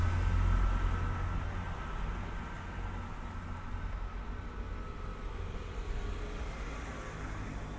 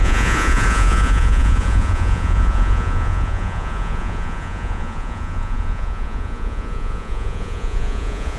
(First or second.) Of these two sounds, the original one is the first